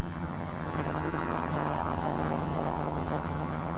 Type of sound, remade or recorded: remade